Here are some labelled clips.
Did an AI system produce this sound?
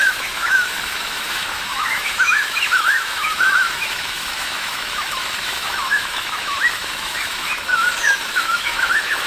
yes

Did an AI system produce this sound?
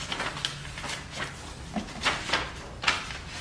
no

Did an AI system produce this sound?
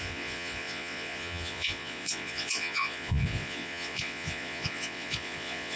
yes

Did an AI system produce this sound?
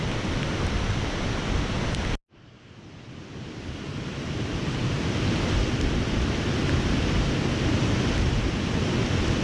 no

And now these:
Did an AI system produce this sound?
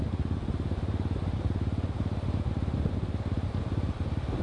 no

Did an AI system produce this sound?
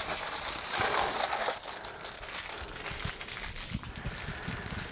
no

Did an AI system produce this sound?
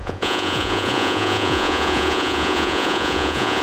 yes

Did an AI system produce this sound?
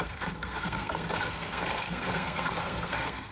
yes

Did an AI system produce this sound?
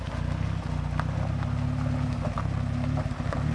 no